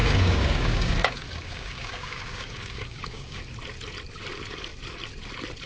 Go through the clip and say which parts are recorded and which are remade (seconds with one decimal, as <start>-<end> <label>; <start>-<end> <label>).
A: 0.0-3.4 remade; 3.4-5.7 recorded